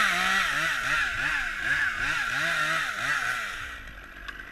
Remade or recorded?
recorded